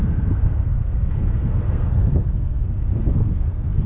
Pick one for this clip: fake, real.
fake